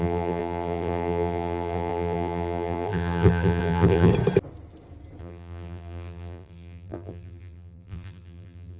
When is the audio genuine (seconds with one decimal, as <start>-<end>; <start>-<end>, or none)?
4.1-5.2